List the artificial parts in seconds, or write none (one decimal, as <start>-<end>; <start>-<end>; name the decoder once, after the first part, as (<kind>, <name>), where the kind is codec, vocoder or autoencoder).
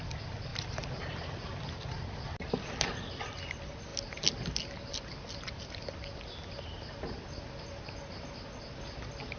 none